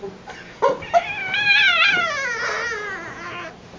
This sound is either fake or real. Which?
real